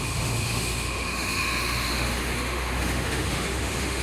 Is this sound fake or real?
fake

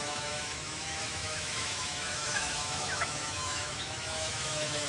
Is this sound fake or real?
fake